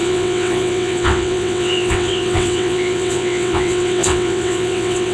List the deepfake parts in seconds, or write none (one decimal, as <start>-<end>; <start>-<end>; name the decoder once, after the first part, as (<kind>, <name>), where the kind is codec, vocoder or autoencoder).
0.0-5.1 (vocoder, WaveNeXt)